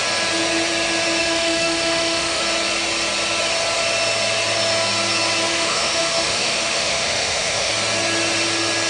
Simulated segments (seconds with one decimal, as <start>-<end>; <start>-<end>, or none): 1.2-2.4; 5.5-7.7